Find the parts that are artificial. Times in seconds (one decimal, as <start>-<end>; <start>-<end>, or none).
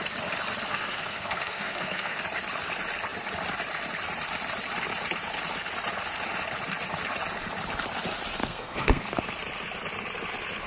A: 0.7-2.2; 8.4-9.2